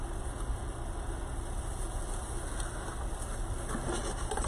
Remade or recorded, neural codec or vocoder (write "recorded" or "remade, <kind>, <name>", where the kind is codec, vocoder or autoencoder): recorded